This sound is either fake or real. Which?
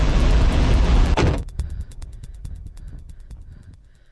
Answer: fake